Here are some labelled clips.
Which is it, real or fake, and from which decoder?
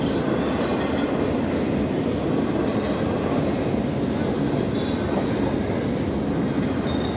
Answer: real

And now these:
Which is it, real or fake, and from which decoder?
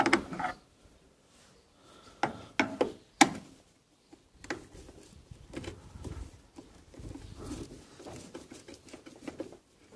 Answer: real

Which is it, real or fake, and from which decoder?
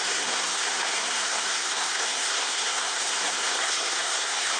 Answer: fake, codec, SNAC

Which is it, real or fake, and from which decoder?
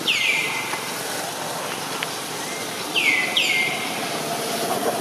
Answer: real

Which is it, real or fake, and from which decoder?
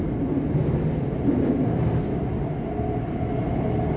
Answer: real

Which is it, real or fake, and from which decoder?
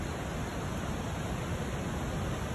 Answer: real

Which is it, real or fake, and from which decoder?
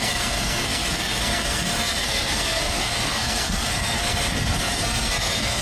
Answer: fake, codec, SNAC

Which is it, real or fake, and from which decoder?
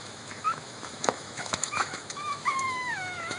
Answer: fake, autoencoder, DAC-VAE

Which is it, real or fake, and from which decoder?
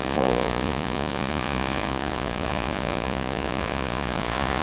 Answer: fake, vocoder, Vocos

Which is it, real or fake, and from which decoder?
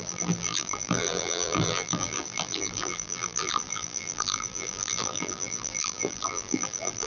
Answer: fake, vocoder, BigVGAN v2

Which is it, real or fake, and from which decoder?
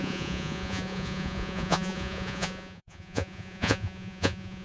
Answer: fake, vocoder, Vocos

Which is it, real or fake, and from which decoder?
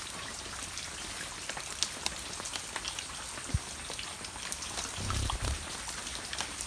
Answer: real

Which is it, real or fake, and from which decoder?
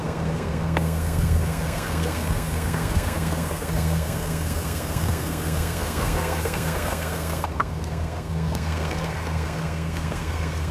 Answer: fake, codec, SNAC